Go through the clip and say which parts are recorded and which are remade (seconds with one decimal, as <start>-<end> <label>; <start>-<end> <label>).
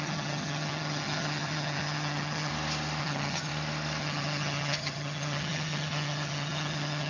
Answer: 0.0-2.5 remade; 2.5-3.0 recorded; 3.0-3.5 remade; 3.5-4.0 recorded; 4.0-7.1 remade